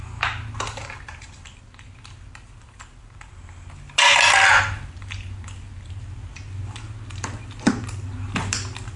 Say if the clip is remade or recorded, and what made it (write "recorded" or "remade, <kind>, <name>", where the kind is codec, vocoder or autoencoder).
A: recorded